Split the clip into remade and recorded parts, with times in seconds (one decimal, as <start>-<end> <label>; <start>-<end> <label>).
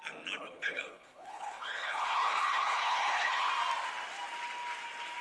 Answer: 0.0-0.4 recorded; 0.4-3.5 remade; 3.5-5.2 recorded